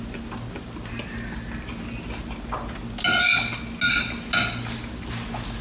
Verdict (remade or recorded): recorded